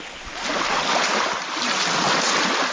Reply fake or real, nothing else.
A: real